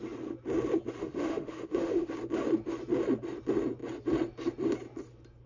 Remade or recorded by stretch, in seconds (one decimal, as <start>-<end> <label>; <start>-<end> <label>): 0.0-1.0 recorded; 1.0-2.1 remade; 2.1-5.5 recorded